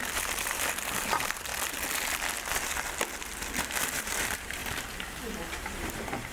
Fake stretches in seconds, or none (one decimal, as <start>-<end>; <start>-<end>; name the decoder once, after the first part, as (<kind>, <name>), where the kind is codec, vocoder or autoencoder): 0.0-1.5 (vocoder, BigVGAN v2); 4.0-6.3